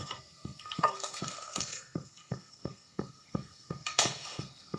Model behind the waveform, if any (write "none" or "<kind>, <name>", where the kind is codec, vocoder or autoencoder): codec, SNAC